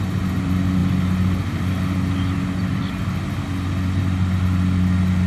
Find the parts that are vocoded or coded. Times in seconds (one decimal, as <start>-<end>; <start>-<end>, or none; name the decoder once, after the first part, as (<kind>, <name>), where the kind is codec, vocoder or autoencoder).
none